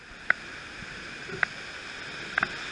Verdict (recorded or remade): recorded